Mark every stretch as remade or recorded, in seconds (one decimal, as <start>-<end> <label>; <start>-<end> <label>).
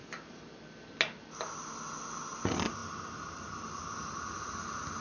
0.0-5.0 recorded